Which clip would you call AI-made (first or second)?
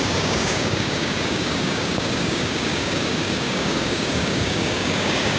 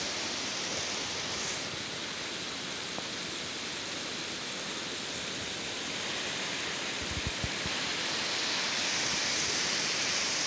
first